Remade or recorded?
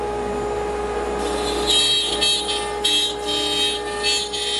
recorded